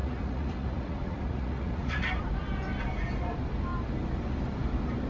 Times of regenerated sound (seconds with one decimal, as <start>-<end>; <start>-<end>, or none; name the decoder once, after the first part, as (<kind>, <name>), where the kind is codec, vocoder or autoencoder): 0.0-2.2 (vocoder, Vocos)